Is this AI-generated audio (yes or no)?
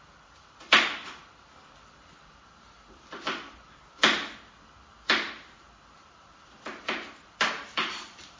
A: yes